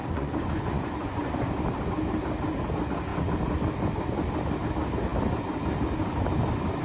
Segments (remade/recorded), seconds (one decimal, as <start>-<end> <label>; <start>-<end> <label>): 0.0-1.5 remade; 1.5-6.8 recorded